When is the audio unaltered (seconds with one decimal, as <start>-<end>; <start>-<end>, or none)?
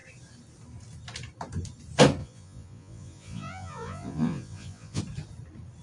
0.0-2.2; 5.0-5.8